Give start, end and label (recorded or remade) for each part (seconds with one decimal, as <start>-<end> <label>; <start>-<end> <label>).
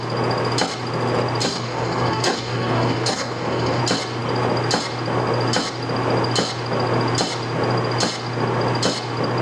0.0-1.4 recorded; 1.4-3.8 remade; 3.8-9.4 recorded